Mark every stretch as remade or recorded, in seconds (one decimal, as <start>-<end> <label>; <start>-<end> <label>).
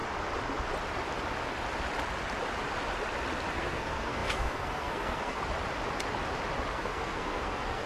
0.0-3.5 recorded; 3.5-5.4 remade; 5.4-6.7 recorded; 6.7-7.9 remade